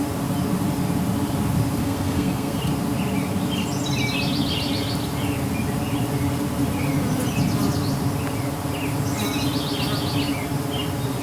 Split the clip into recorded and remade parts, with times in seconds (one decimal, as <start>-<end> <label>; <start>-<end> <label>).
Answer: 0.0-1.8 recorded; 1.8-2.6 remade; 2.6-11.2 recorded